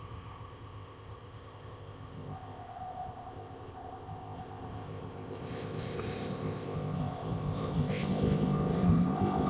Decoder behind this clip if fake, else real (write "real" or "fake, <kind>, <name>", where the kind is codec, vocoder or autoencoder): fake, codec, ZipCodec